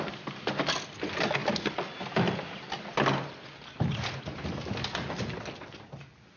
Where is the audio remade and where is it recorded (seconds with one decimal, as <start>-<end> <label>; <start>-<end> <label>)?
0.0-6.4 recorded